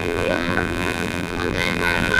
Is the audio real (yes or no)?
no